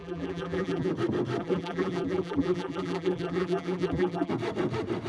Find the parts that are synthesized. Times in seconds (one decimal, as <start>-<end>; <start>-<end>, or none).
0.0-0.9; 1.4-4.3